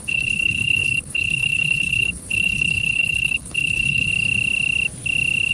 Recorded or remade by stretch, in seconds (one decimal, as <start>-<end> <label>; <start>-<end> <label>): 0.0-4.1 remade; 4.1-5.5 recorded